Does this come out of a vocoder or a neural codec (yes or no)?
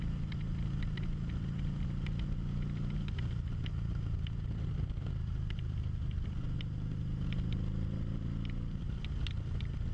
no